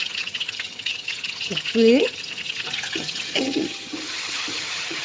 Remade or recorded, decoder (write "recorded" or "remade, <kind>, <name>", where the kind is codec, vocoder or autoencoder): remade, vocoder, HiFi-GAN